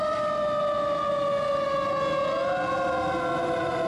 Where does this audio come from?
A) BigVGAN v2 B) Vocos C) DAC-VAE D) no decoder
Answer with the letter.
D